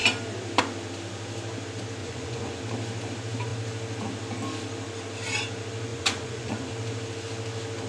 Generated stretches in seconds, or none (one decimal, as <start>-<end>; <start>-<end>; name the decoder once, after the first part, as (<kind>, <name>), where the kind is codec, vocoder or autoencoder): 2.0-2.6 (vocoder, Vocos); 5.9-6.7